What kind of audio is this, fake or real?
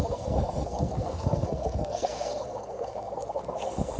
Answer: fake